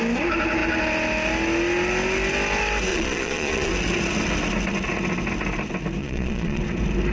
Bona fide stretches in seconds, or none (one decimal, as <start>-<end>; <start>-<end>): 0.0-2.9; 3.7-6.0; 6.6-7.1